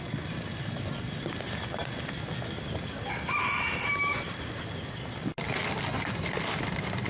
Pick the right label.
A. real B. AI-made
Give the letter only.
A